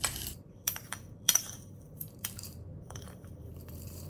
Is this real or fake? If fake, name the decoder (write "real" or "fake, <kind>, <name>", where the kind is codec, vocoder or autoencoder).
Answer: fake, vocoder, BigVGAN v2